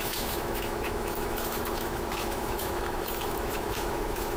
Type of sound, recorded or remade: remade